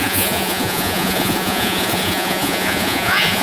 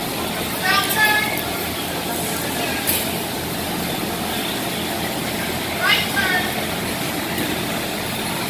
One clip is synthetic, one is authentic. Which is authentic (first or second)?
second